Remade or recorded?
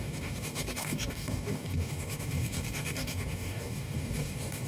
remade